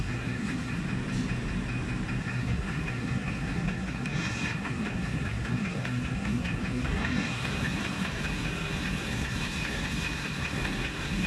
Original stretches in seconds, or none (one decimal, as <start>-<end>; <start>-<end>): 0.8-2.2